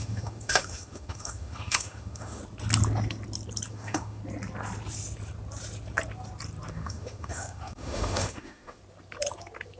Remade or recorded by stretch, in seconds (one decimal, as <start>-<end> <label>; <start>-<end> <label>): 0.0-2.4 remade; 2.4-3.7 recorded; 3.7-4.2 remade; 4.2-6.7 recorded; 6.7-8.8 remade; 8.8-9.8 recorded